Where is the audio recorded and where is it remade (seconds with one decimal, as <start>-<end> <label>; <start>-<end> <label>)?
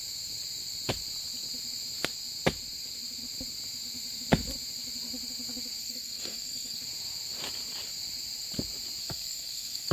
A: 0.0-5.8 recorded; 5.8-6.8 remade; 6.8-9.0 recorded; 9.0-9.9 remade